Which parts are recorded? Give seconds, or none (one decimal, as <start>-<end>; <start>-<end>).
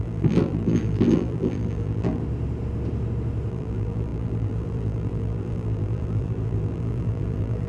2.2-3.5